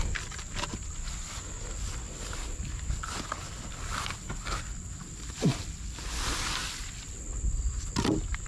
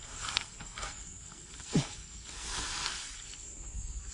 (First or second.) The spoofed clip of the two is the second